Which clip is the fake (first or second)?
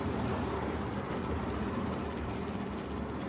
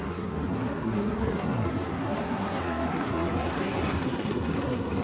second